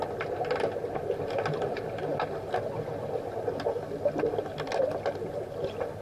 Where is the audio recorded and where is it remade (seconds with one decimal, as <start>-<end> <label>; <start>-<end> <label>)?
0.0-6.0 recorded